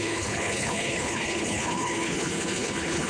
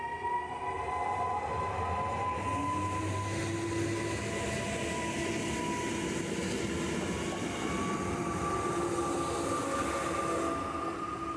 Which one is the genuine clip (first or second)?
second